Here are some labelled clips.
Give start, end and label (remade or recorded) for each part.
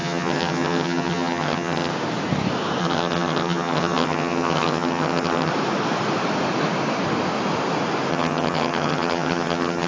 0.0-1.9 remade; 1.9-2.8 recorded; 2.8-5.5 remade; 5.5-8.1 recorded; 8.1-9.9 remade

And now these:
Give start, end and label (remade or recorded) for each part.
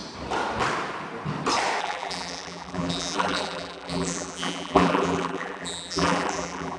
0.0-1.8 recorded; 1.8-6.8 remade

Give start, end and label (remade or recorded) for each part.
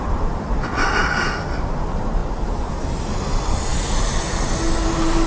0.0-5.3 recorded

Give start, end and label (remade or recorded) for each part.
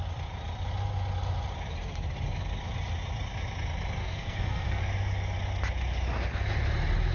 0.0-4.0 recorded; 4.0-4.8 remade; 4.8-7.1 recorded